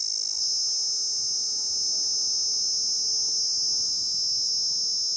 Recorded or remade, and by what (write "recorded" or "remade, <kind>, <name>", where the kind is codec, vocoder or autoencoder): recorded